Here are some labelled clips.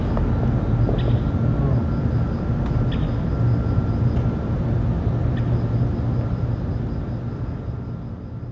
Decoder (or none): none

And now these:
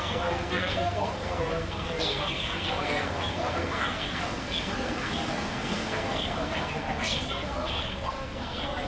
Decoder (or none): codec, SNAC